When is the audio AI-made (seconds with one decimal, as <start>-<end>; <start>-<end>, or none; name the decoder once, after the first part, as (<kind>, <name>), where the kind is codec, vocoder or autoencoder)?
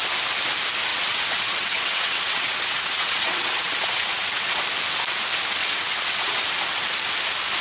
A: 0.9-4.6 (vocoder, WaveNeXt); 5.6-6.4